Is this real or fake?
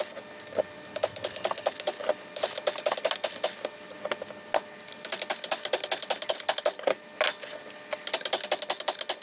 real